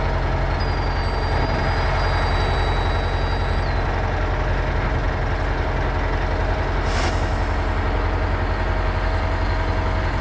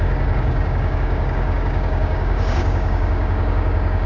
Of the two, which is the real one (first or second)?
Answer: first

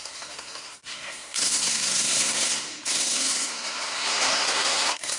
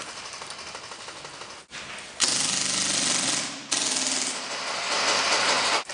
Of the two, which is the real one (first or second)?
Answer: second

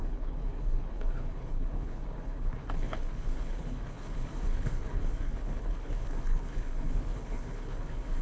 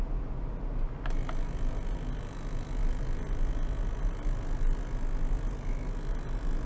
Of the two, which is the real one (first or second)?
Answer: second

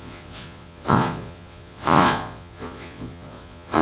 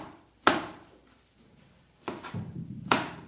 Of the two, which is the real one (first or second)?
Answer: second